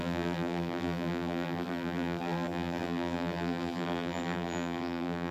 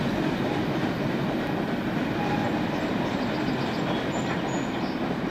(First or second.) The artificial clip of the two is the first